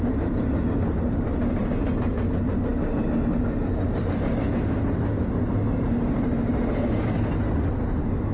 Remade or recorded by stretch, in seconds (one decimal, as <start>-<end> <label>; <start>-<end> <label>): 0.0-8.3 recorded